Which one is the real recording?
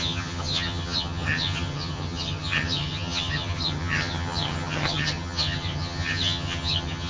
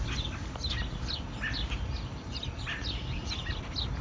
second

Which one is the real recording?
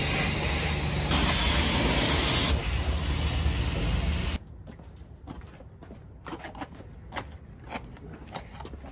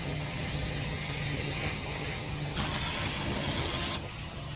first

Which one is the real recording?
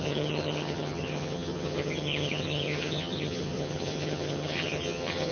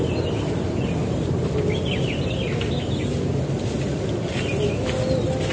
second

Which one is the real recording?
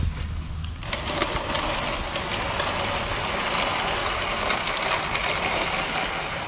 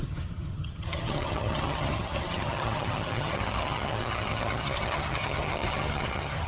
first